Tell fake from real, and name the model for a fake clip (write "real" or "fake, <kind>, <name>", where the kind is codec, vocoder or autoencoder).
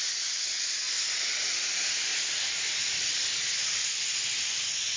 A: real